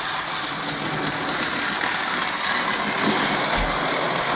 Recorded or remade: recorded